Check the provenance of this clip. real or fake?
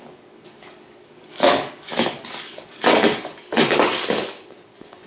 fake